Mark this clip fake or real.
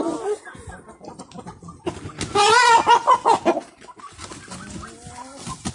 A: real